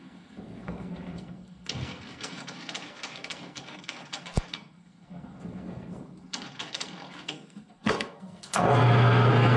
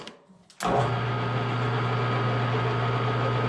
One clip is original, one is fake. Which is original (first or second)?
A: second